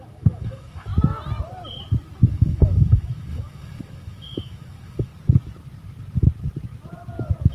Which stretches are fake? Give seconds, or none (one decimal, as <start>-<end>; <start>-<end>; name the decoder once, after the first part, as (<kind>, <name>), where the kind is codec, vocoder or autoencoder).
0.0-0.9 (autoencoder, DAC-VAE); 2.3-5.1